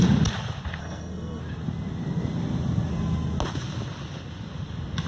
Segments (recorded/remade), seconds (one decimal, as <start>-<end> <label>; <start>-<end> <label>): 0.0-0.8 recorded; 0.8-1.4 remade; 1.4-5.1 recorded